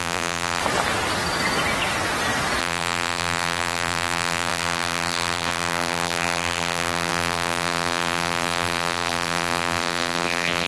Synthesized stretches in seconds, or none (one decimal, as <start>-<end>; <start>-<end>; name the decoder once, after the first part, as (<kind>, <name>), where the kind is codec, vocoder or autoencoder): 0.0-0.6 (vocoder, BigVGAN v2); 2.6-10.7